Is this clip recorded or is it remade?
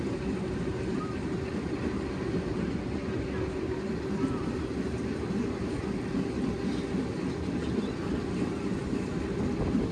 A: recorded